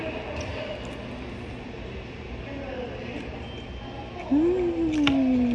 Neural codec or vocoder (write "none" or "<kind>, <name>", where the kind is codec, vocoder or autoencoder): none